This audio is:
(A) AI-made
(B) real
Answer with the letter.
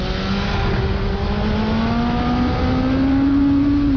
B